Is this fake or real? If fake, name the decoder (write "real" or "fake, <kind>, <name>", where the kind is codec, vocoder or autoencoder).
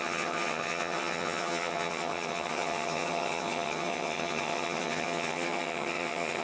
fake, vocoder, HiFi-GAN